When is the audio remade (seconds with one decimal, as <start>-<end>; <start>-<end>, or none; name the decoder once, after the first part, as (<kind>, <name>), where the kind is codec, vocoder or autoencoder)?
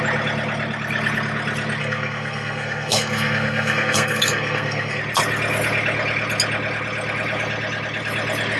1.8-5.0 (codec, SNAC)